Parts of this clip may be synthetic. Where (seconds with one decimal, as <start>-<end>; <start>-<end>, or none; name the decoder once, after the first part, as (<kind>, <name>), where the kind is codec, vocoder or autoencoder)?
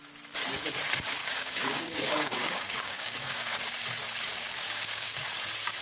1.2-3.6 (codec, DAC); 4.3-5.2